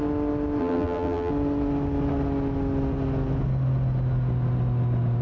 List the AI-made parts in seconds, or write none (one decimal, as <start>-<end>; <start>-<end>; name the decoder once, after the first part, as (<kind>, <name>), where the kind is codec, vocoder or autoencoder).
0.6-1.3 (vocoder, BigVGAN v2)